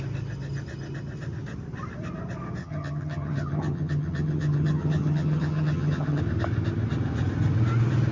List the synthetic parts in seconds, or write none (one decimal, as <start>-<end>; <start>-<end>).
2.6-6.2